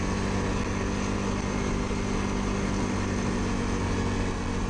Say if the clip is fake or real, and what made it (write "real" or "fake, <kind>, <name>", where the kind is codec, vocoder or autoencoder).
real